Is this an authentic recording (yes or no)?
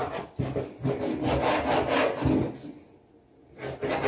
yes